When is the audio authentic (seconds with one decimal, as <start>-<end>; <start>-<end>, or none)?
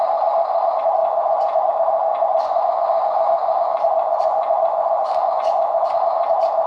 0.0-1.0; 1.7-2.1; 5.9-6.7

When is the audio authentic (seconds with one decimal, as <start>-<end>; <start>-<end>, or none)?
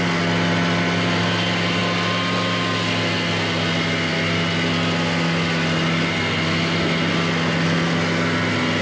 0.0-8.8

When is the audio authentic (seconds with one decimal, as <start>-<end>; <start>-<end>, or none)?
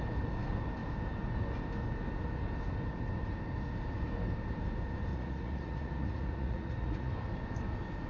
0.0-5.1; 7.1-8.1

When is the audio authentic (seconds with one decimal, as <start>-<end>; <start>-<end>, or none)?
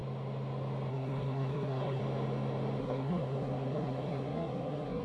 0.0-0.9; 2.0-2.8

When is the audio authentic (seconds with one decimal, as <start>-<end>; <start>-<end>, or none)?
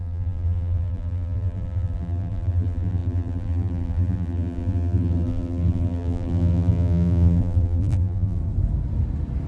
8.4-9.5